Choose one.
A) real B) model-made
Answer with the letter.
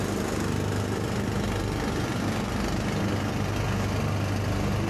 A